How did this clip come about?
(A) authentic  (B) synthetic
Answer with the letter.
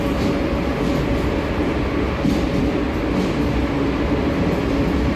A